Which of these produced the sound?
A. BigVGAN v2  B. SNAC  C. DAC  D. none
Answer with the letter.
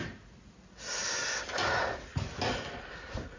D